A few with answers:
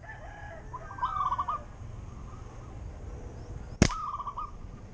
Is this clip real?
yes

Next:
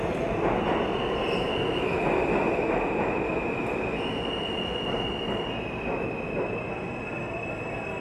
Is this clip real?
yes